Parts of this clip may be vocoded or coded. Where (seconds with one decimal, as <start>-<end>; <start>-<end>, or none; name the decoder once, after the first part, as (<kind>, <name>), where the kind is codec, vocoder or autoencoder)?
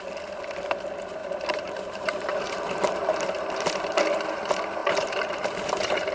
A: 1.2-4.0 (vocoder, BigVGAN v2); 4.8-6.1